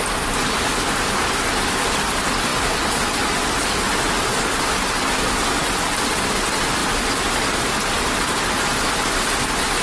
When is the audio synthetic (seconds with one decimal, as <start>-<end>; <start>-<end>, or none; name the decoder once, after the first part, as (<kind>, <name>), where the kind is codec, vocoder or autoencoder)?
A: none